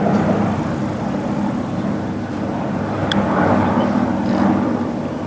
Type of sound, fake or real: fake